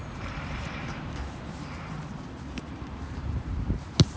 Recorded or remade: remade